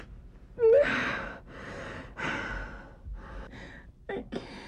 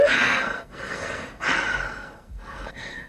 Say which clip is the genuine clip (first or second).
first